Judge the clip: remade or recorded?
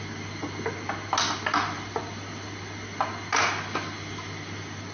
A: recorded